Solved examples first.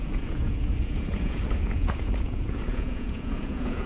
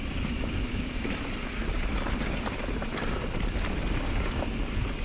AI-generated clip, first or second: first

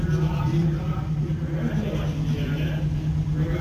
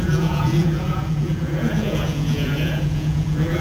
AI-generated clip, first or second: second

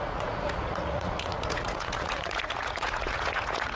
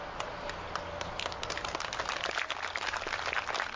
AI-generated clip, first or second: first